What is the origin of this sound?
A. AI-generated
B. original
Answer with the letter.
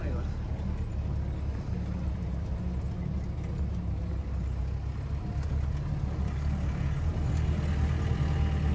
B